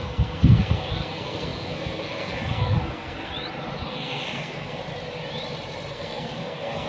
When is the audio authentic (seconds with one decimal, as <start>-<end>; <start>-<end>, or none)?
3.3-3.9; 4.8-5.9